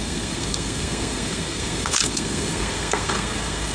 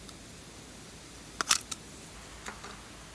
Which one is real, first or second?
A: second